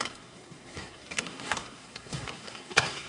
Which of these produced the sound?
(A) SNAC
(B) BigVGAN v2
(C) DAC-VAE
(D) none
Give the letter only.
A